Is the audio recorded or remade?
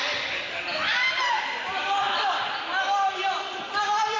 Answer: recorded